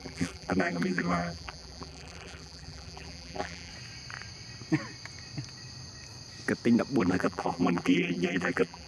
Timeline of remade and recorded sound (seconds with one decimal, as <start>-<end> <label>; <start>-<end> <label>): 0.0-3.7 remade; 3.7-7.0 recorded; 7.0-8.9 remade